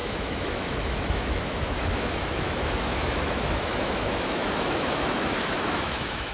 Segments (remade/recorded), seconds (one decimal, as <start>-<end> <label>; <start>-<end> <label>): 0.0-6.3 remade